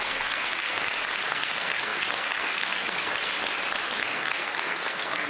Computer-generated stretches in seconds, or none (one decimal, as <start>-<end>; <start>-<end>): 0.0-0.8; 1.3-3.3; 4.0-5.3